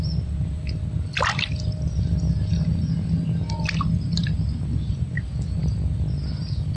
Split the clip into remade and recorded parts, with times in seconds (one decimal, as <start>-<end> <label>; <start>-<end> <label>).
0.0-6.8 recorded